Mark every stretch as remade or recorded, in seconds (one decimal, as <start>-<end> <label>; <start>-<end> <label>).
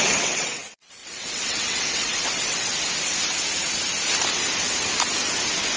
0.0-2.7 remade; 2.7-5.8 recorded